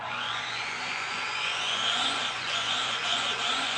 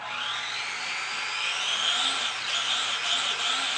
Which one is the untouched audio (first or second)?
second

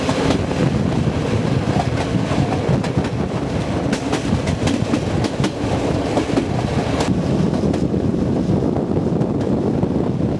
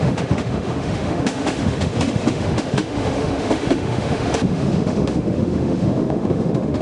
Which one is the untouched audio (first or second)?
first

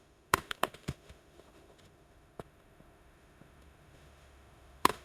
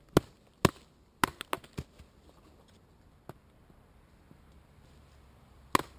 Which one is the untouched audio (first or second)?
second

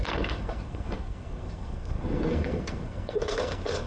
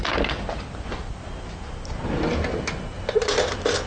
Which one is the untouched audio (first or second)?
second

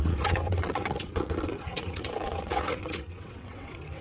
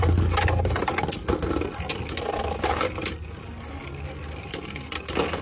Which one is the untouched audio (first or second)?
second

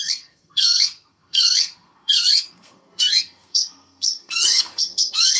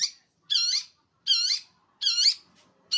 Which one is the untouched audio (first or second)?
second